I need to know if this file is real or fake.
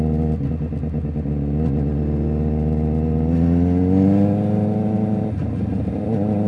real